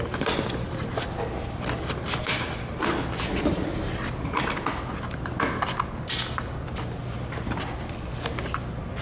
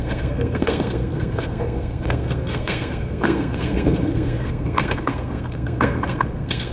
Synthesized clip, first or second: second